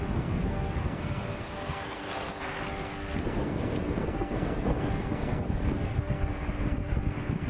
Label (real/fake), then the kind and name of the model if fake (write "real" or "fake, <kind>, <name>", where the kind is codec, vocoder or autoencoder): fake, codec, SNAC